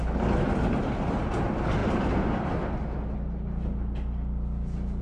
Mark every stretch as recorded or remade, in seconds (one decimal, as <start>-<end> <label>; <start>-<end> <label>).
0.0-5.0 recorded